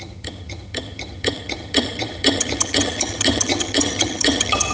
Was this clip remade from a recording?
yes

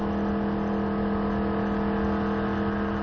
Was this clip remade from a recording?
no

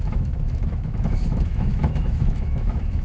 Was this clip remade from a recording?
yes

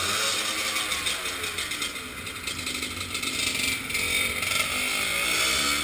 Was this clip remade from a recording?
no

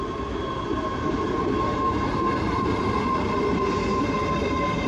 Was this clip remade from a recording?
yes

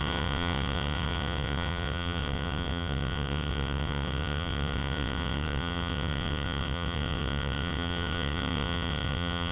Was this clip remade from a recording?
yes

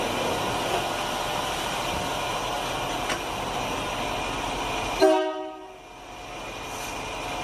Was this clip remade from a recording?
no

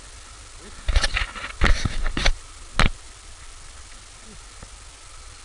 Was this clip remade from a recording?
no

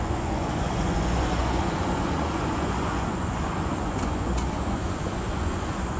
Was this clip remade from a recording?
yes